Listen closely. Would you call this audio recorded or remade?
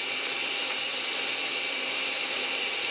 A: remade